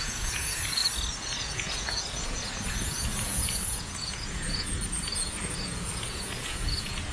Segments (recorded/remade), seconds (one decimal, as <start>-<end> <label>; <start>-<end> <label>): 0.0-0.8 remade; 0.8-1.4 recorded; 1.4-7.1 remade